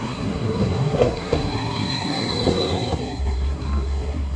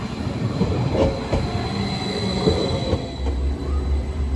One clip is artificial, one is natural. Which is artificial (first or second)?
first